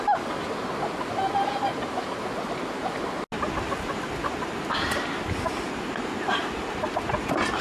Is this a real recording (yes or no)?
yes